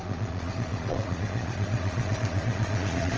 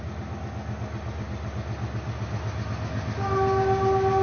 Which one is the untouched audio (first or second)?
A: second